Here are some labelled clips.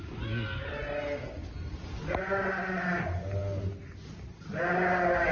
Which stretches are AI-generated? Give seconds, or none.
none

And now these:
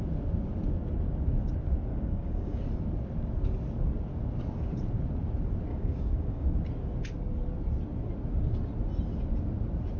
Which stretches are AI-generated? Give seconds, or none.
1.9-2.6; 5.7-6.6

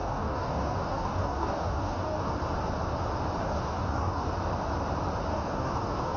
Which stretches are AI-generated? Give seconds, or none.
0.0-2.3; 3.4-4.3; 5.3-6.2

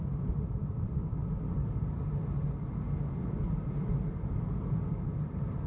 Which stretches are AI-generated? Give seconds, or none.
none

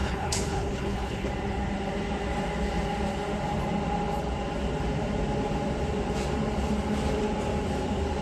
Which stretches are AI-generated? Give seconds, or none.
0.0-1.3

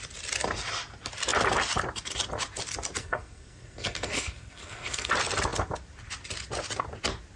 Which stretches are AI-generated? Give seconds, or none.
3.0-5.1